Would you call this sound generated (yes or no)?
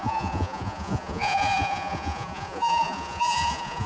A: yes